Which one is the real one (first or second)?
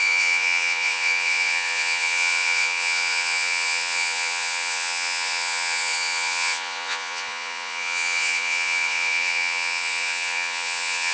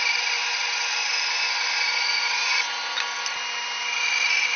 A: second